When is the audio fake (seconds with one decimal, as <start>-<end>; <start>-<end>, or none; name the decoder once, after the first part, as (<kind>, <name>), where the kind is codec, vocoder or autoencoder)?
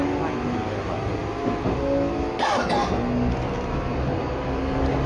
none